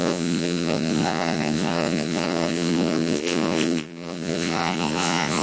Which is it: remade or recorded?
remade